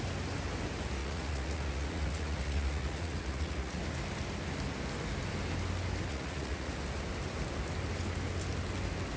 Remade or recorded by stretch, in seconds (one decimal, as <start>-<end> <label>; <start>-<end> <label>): 0.0-1.0 recorded; 1.0-3.8 remade; 3.8-6.1 recorded; 6.1-6.7 remade; 6.7-9.2 recorded